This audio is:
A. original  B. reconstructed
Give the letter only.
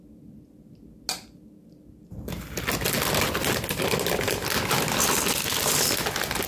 A